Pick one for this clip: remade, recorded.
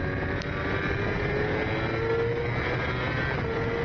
recorded